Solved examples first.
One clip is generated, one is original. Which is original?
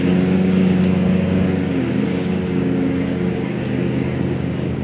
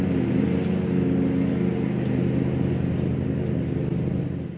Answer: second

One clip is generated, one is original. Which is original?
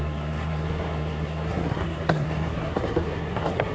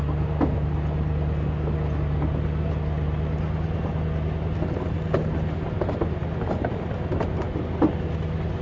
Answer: second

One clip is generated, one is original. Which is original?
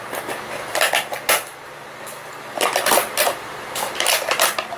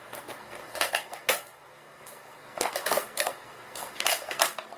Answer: first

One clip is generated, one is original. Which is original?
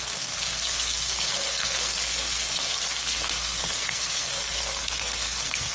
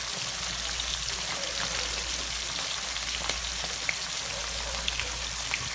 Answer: second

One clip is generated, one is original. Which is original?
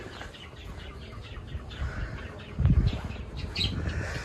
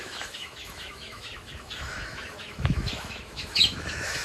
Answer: first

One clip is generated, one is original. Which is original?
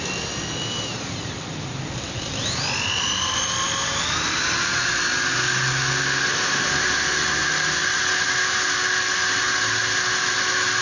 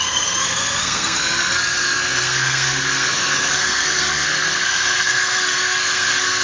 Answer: first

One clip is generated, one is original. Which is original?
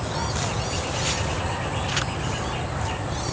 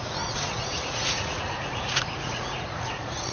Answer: first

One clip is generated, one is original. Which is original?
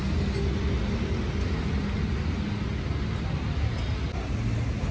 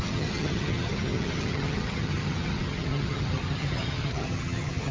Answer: first